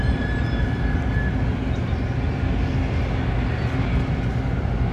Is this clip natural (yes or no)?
yes